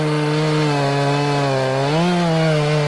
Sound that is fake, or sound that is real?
real